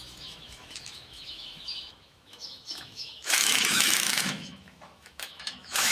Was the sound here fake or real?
fake